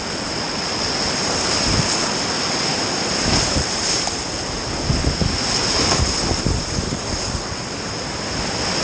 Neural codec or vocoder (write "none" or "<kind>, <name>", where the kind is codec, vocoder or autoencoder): none